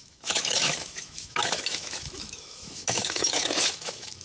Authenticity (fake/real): fake